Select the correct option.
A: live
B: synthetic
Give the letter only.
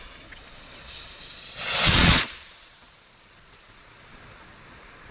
B